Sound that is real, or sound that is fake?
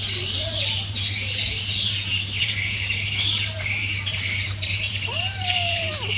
fake